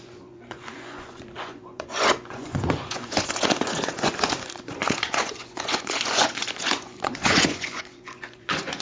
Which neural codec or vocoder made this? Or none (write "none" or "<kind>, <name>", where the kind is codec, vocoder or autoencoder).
vocoder, Vocos